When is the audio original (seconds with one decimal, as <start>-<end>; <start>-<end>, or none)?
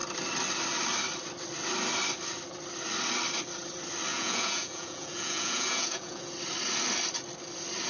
0.0-4.1; 6.3-7.9